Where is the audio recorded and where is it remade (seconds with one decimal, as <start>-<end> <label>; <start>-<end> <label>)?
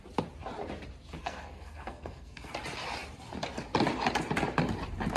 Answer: 0.0-1.2 recorded; 1.2-2.5 remade; 2.5-5.2 recorded